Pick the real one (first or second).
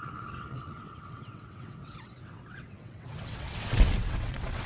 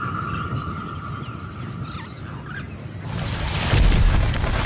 second